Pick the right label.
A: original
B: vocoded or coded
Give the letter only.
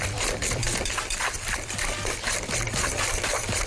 B